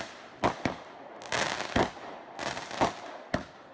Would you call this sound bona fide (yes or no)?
yes